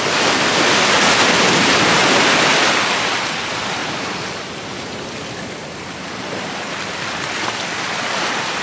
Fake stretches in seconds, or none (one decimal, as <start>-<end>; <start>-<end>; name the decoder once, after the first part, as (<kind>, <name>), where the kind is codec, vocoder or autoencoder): 0.0-8.6 (vocoder, BigVGAN v2)